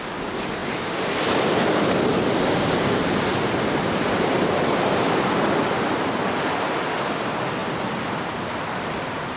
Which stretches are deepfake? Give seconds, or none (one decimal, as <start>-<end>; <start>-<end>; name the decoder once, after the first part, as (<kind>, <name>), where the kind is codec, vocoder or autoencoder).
0.6-2.7 (vocoder, BigVGAN v2); 7.6-8.2